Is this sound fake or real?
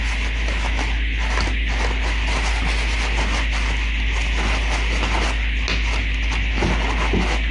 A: real